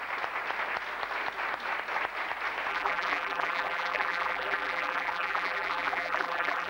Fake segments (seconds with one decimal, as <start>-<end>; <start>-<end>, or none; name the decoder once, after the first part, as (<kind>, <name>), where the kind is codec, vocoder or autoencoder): 2.7-6.7 (vocoder, BigVGAN v2)